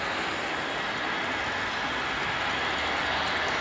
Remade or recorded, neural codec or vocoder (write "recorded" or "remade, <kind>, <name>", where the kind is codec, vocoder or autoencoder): recorded